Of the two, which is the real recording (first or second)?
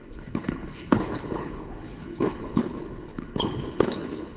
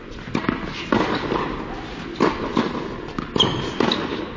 second